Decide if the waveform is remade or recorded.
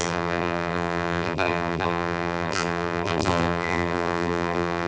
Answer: remade